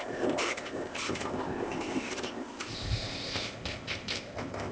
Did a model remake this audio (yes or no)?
yes